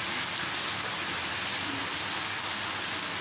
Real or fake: real